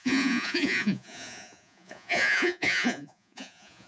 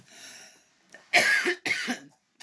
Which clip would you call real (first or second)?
second